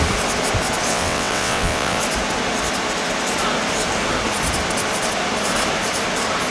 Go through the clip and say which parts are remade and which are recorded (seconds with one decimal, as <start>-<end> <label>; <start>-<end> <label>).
0.0-0.9 recorded; 0.9-2.0 remade; 2.0-6.5 recorded